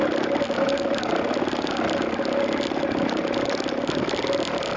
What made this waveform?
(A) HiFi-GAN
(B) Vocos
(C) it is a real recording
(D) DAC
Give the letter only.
C